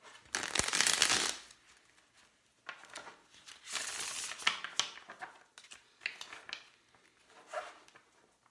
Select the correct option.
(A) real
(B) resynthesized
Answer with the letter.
A